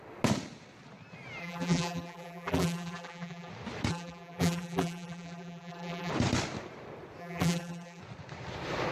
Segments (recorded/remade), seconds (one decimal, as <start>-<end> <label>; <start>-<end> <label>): 0.0-1.4 recorded; 1.4-3.5 remade; 3.5-3.9 recorded; 3.9-6.1 remade; 6.1-7.2 recorded; 7.2-8.0 remade; 8.0-8.9 recorded